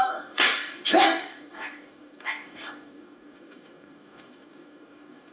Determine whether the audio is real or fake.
fake